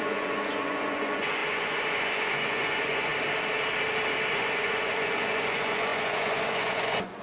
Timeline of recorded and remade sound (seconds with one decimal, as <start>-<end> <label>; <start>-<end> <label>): 0.0-3.1 remade; 3.1-4.3 recorded; 4.3-7.2 remade